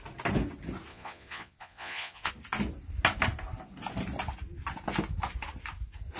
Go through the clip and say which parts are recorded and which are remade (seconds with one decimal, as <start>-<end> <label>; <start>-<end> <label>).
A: 0.0-0.9 recorded; 0.9-2.3 remade; 2.3-6.2 recorded